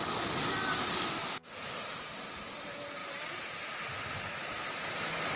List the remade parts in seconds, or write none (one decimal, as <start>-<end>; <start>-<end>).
none